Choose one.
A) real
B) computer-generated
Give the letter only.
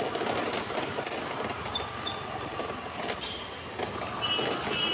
A